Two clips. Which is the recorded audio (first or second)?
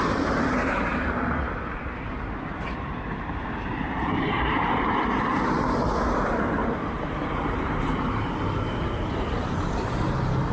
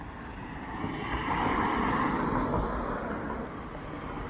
second